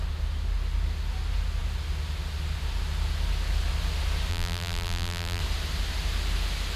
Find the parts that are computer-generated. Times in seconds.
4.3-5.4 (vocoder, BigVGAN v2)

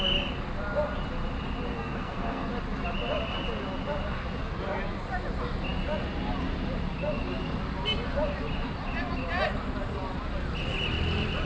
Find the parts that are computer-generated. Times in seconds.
1.7-2.5 (codec, SNAC)

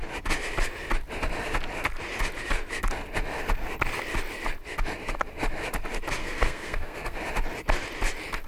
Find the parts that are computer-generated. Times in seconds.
6.2-7.2 (codec, SNAC)

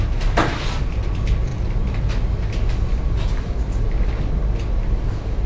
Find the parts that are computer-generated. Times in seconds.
none

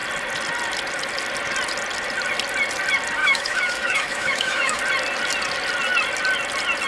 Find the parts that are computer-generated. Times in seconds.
3.2-4.8 (autoencoder, DAC-VAE)

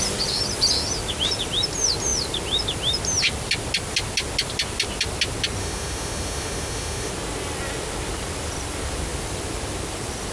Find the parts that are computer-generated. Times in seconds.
5.6-7.1 (autoencoder, DAC-VAE)

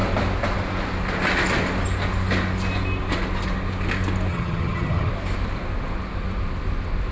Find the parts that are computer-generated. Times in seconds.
4.3-5.1 (vocoder, HiFi-GAN)

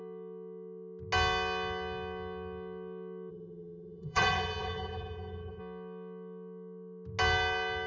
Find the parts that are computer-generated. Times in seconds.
3.3-5.6 (vocoder, HiFi-GAN)